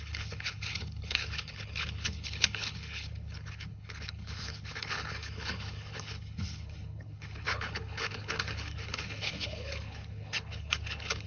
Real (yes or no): no